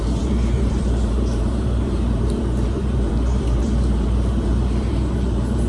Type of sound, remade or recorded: remade